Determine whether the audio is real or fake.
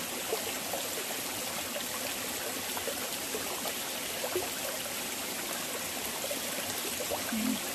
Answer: real